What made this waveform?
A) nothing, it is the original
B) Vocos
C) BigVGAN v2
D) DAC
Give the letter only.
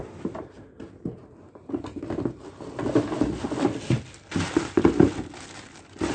A